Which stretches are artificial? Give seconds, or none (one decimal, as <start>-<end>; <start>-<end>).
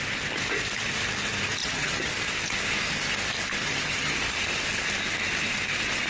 1.6-2.1; 3.6-4.2